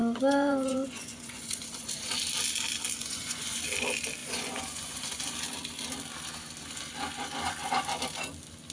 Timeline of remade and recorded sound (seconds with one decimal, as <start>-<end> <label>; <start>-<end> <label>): 0.0-2.1 remade; 2.1-3.0 recorded; 3.0-3.6 remade; 3.6-4.2 recorded; 4.2-5.2 remade; 5.2-8.7 recorded